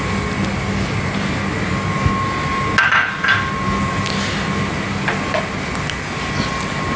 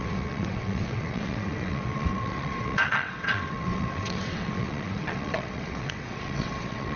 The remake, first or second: second